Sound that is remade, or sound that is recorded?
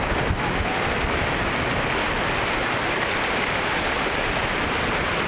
recorded